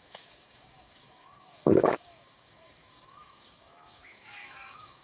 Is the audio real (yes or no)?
no